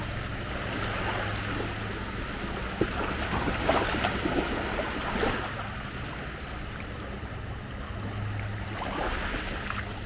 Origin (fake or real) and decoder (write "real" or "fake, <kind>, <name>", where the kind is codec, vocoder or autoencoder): real